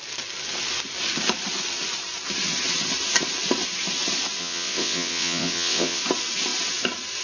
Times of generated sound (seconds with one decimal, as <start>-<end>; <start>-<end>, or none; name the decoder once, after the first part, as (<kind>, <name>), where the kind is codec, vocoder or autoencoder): 4.4-6.0 (vocoder, WaveNeXt)

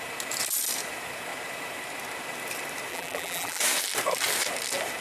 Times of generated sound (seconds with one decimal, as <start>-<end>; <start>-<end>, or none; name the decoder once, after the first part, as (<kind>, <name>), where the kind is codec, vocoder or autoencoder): 2.9-3.6 (vocoder, BigVGAN v2)

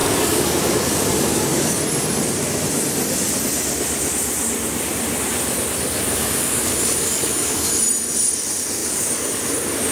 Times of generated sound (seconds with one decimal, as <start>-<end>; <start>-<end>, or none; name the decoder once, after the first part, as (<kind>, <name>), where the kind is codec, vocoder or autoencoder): 0.0-1.8 (codec, DAC); 6.1-7.8; 8.8-9.4

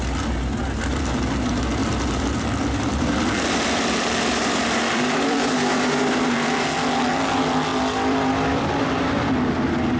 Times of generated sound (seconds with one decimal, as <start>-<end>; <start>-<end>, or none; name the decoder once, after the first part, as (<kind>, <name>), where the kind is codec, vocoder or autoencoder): 1.8-7.0 (vocoder, BigVGAN v2); 7.7-8.7

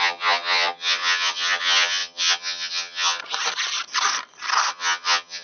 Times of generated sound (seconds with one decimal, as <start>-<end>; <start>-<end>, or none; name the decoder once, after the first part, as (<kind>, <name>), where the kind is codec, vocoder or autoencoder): 0.0-3.2 (vocoder, HiFi-GAN); 4.7-5.4

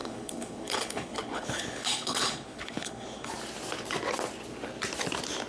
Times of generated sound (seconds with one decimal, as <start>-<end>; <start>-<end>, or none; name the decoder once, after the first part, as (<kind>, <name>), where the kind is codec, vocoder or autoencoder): 0.0-3.3 (codec, HILCodec)

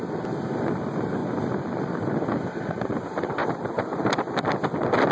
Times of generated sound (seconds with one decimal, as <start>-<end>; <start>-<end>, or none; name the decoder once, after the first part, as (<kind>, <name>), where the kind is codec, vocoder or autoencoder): 1.2-1.8 (vocoder, BigVGAN v2); 3.4-4.4